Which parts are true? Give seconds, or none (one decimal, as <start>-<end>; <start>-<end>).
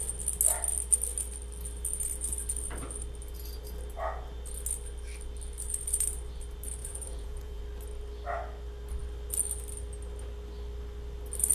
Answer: 0.0-6.8; 7.6-11.5